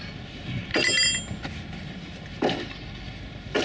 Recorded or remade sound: recorded